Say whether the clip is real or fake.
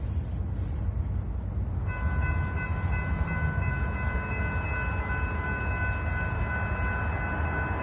real